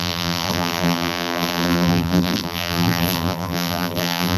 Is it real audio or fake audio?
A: fake